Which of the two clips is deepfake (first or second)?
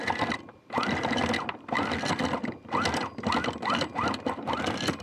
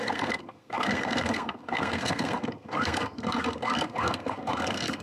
second